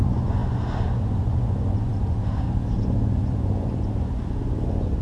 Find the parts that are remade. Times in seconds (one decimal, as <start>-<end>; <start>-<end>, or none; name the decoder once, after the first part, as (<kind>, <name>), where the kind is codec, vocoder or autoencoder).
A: 0.0-5.0 (vocoder, Vocos)